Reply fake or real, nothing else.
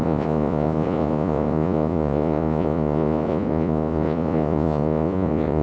fake